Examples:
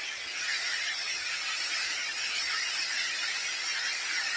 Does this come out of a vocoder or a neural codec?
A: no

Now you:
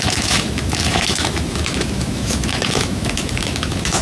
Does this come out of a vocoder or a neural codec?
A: yes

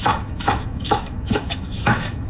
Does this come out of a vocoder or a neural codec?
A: yes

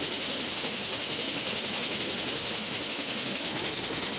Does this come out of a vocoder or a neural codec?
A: yes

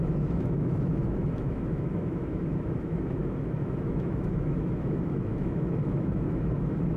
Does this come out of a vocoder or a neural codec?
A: yes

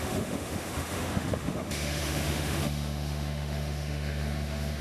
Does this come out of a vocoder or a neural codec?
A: yes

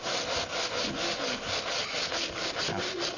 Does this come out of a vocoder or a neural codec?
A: no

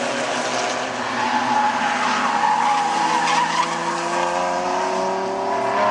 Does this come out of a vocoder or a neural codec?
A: no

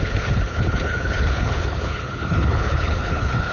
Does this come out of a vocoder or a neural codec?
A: yes